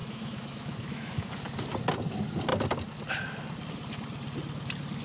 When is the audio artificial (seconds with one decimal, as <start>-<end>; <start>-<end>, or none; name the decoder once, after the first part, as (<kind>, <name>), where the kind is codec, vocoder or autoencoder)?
0.0-1.3 (autoencoder, DAC-VAE)